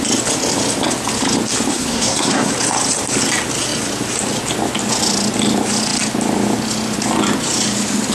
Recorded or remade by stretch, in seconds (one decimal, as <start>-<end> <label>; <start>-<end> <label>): 0.0-1.7 recorded; 1.7-2.5 remade; 2.5-8.1 recorded